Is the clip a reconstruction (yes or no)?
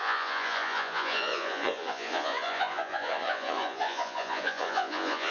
yes